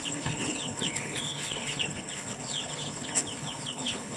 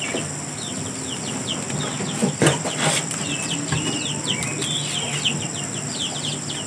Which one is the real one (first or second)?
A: second